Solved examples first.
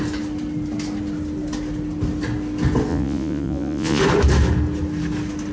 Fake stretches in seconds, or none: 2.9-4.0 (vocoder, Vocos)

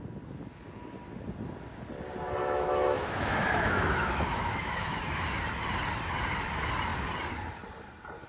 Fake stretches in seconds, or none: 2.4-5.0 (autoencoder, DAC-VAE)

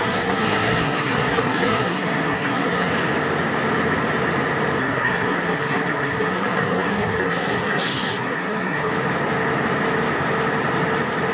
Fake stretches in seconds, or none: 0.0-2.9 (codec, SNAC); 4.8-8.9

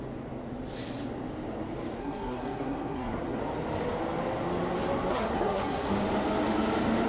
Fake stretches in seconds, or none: 2.0-3.4 (codec, SNAC); 5.1-5.9

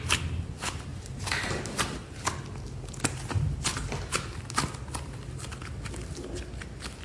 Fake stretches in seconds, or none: 0.9-1.6 (vocoder, BigVGAN v2)

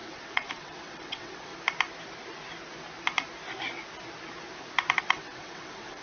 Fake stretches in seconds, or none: 0.0-1.5 (vocoder, WaveNeXt); 5.0-6.0

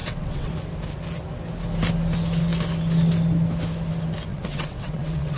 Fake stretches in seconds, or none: 0.0-0.5 (vocoder, WaveNeXt); 4.3-5.4